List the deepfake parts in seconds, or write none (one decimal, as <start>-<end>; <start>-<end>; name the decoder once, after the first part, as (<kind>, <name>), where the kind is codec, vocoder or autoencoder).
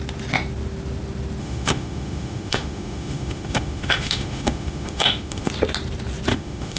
1.4-5.5 (autoencoder, DAC-VAE); 6.3-6.8